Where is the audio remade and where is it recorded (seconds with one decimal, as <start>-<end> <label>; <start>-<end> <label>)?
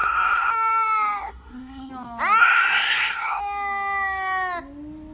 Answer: 0.0-0.5 remade; 0.5-1.2 recorded; 1.2-1.9 remade; 1.9-2.4 recorded; 2.4-3.4 remade; 3.4-5.1 recorded